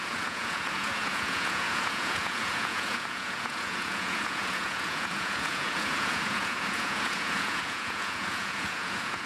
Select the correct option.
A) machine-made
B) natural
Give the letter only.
A